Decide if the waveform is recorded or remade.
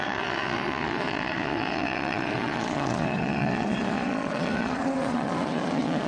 remade